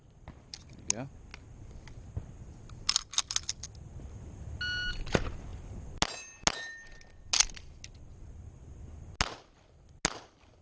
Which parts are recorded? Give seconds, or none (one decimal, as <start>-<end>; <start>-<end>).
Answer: 0.0-10.6